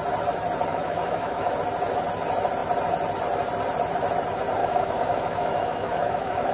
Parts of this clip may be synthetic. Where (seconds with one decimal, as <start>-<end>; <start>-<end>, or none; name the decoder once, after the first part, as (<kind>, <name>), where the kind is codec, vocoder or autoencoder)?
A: 0.7-1.5 (autoencoder, DAC-VAE); 4.6-6.5